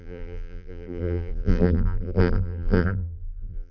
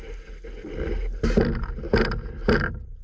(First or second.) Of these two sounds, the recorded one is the second